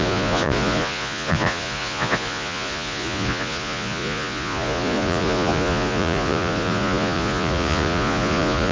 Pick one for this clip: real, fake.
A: fake